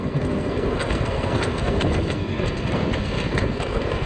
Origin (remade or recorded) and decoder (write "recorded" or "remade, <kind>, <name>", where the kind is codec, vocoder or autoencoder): remade, codec, SNAC